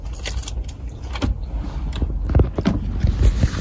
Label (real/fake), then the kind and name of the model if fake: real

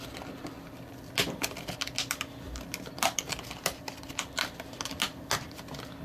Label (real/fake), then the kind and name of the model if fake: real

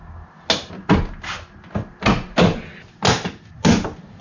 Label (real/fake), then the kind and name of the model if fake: real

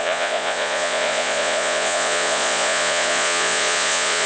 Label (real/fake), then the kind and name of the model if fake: fake, vocoder, Vocos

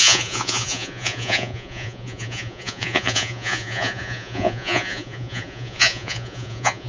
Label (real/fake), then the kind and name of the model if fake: fake, vocoder, Vocos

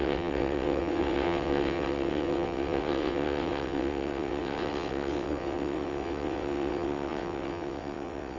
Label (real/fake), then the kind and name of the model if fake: fake, vocoder, WaveNeXt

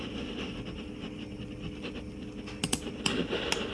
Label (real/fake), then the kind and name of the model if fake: real